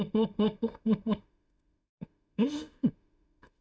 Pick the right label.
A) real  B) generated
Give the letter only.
B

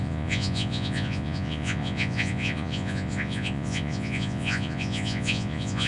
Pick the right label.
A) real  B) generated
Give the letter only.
B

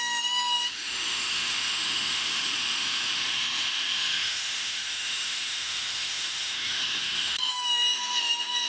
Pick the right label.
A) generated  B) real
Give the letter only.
A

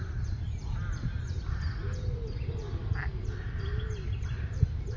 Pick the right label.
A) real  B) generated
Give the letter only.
A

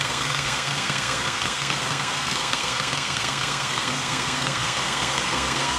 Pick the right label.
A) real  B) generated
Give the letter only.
B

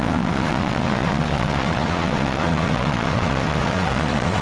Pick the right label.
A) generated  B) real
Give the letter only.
A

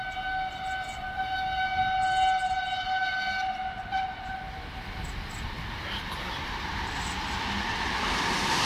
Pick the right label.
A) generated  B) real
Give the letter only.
B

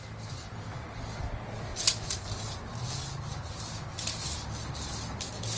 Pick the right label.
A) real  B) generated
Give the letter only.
A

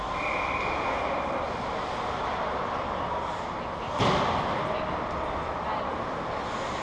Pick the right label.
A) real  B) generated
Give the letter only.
A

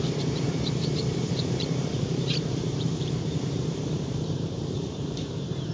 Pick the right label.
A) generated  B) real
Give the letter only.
A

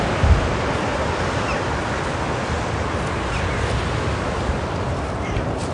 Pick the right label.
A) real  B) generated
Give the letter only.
A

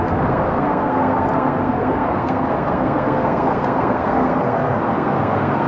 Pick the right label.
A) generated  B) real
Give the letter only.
A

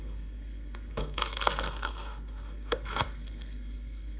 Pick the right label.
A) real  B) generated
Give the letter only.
B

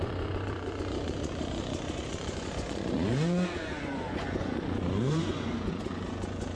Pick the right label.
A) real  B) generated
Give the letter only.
B